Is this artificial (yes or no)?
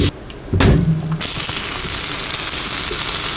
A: no